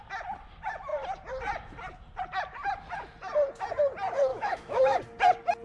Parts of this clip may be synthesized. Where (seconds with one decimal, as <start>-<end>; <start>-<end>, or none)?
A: 4.3-5.0